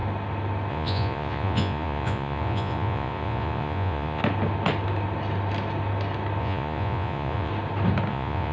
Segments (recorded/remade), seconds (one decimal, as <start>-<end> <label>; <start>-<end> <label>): 0.0-0.7 recorded; 0.7-4.2 remade; 4.2-6.4 recorded; 6.4-7.5 remade; 7.5-8.1 recorded; 8.1-8.5 remade